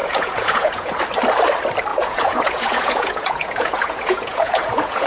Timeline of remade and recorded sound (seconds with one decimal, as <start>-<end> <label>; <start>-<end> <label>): 0.0-0.9 remade; 0.9-1.9 recorded; 1.9-5.1 remade